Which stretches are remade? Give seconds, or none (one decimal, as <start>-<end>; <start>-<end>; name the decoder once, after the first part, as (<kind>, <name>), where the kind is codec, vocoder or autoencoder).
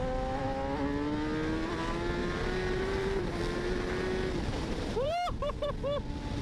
2.2-3.4 (vocoder, BigVGAN v2); 4.5-5.5